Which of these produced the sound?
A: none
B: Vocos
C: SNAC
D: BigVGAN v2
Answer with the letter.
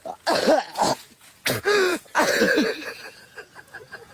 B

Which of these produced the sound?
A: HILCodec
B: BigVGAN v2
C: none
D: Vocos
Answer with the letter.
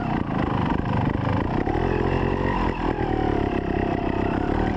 C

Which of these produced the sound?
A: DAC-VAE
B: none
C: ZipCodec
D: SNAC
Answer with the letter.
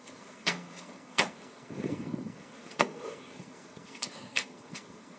D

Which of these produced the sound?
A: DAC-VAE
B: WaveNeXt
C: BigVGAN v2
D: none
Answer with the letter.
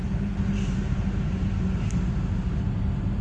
D